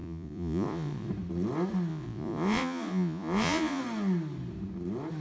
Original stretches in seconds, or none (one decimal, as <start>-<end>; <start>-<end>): 1.1-1.9; 3.8-5.2